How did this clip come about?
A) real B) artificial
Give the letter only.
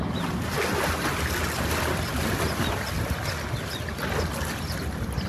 A